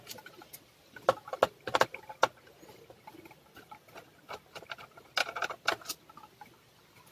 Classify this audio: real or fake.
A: real